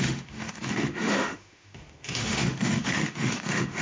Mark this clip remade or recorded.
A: remade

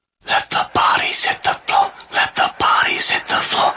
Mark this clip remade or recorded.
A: recorded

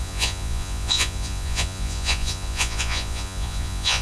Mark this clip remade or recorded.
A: remade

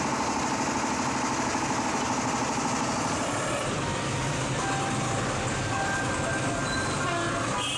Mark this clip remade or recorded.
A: recorded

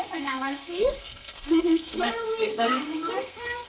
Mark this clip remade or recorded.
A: remade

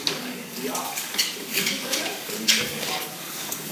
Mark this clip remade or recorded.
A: remade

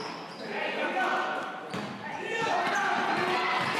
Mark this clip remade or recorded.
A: recorded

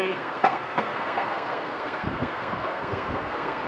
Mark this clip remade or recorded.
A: remade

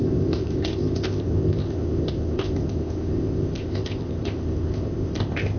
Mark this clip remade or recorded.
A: remade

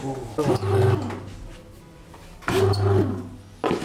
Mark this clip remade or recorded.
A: recorded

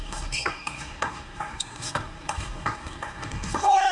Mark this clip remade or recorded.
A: remade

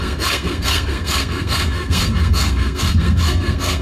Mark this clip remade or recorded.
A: remade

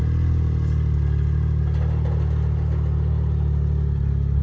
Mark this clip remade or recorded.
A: recorded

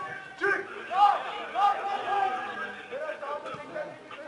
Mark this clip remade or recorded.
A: recorded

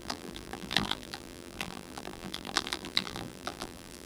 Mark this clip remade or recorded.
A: remade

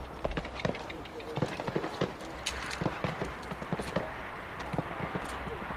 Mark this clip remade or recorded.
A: recorded